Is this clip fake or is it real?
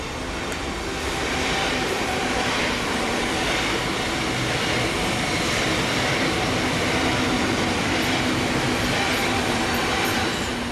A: fake